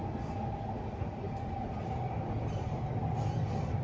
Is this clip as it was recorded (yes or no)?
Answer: yes